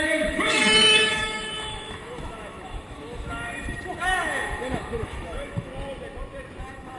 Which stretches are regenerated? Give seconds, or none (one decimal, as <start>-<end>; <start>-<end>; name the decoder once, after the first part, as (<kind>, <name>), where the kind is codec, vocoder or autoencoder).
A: 0.0-5.7 (autoencoder, DAC-VAE); 6.6-7.0